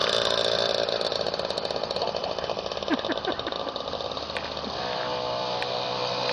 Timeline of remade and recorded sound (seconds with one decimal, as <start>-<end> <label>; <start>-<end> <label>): 0.0-6.3 recorded